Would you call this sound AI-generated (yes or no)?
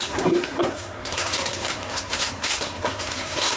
yes